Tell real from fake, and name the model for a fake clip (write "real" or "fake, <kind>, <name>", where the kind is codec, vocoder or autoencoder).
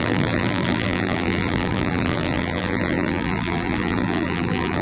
fake, vocoder, BigVGAN v2